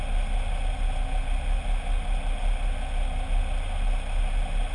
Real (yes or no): yes